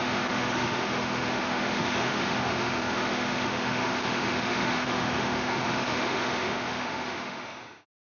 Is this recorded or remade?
remade